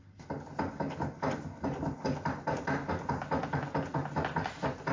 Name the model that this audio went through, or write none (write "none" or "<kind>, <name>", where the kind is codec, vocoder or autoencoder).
none